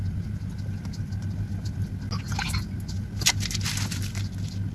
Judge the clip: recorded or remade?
recorded